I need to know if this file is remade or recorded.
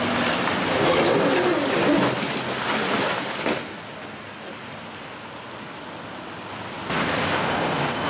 recorded